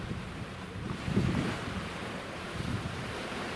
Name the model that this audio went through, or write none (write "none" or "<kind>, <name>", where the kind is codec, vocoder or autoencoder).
vocoder, BigVGAN v2